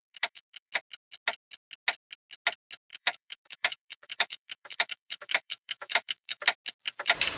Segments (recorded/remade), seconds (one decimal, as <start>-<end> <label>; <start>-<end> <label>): 0.0-0.7 remade; 0.7-2.9 recorded; 2.9-6.4 remade; 6.4-7.4 recorded

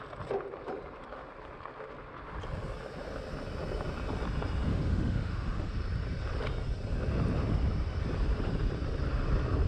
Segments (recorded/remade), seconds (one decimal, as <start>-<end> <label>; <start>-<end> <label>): 0.0-4.7 recorded; 4.7-5.7 remade; 5.7-9.7 recorded

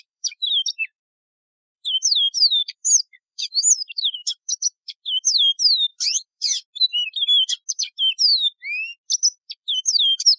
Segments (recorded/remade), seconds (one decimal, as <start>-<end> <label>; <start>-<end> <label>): 0.0-6.6 remade; 6.6-7.7 recorded; 7.7-8.3 remade; 8.3-9.4 recorded; 9.4-10.4 remade

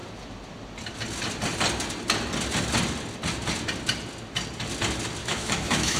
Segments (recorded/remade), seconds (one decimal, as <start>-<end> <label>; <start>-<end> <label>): 0.0-5.2 recorded; 5.2-6.0 remade

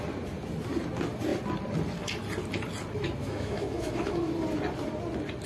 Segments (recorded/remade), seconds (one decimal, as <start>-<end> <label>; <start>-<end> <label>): 0.0-3.2 recorded; 3.2-4.3 remade; 4.3-5.5 recorded

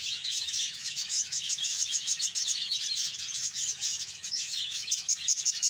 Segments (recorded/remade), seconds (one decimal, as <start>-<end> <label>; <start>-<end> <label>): 0.0-5.7 remade